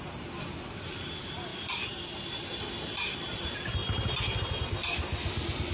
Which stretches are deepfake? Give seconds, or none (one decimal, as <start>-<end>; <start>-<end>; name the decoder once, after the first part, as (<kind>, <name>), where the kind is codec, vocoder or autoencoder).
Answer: none